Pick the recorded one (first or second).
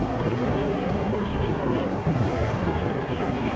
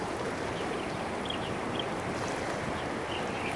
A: second